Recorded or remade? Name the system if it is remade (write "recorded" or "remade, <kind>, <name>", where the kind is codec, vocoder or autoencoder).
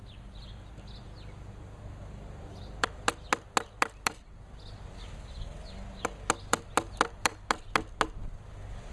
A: recorded